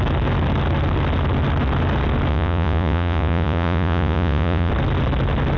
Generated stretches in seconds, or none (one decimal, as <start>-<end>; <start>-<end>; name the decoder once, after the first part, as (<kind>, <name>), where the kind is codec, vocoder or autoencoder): 2.3-4.7 (vocoder, Vocos)